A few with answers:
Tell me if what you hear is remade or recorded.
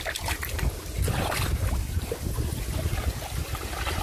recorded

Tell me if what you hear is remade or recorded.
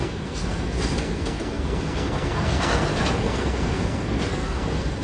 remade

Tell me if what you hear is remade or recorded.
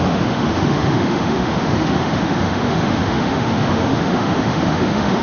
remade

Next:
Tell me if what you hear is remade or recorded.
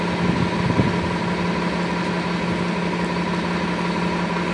recorded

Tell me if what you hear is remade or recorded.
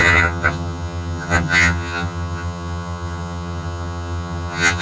remade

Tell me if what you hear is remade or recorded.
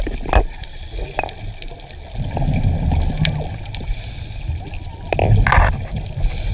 recorded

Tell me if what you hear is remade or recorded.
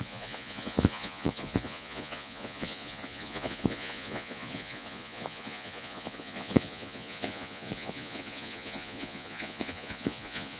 remade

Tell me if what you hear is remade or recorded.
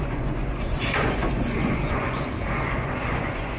remade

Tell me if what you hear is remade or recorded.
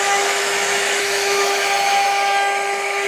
remade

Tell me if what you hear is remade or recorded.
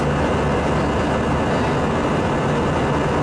recorded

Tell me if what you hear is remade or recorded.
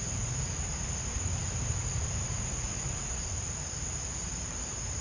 remade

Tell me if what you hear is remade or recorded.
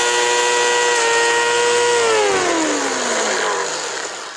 recorded